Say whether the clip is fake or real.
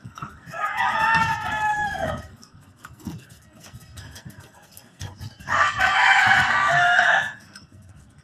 fake